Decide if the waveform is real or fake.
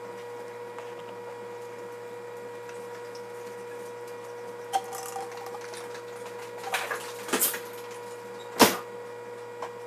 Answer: real